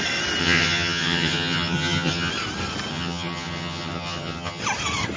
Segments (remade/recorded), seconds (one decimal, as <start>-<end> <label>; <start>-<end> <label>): 0.0-0.4 recorded; 0.4-2.3 remade; 2.3-2.9 recorded; 2.9-4.6 remade; 4.6-5.2 recorded